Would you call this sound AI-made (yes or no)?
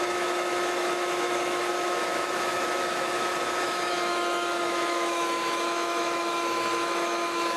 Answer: yes